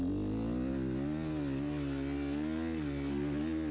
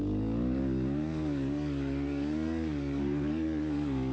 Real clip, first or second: first